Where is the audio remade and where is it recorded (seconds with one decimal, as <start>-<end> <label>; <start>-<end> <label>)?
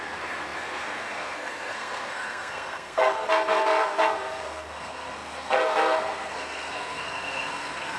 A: 0.0-8.0 remade